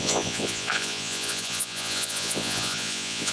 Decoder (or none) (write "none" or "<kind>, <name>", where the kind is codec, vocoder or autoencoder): vocoder, Vocos